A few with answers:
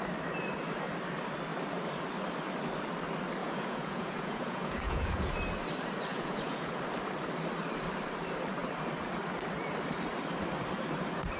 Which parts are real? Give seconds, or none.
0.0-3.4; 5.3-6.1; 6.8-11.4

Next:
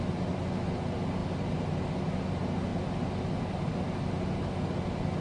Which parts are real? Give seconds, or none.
0.0-5.2

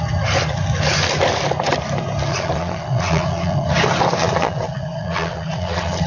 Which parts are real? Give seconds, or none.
0.0-2.3; 3.7-4.2

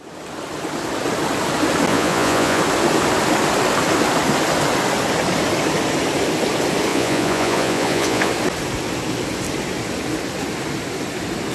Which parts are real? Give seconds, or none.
0.0-1.9; 2.6-6.9; 8.3-11.5

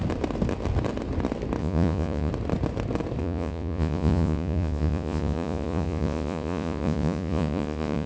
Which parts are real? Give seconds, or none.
0.0-1.6; 2.3-3.2

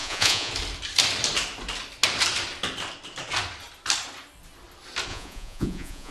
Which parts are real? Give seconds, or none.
0.5-5.1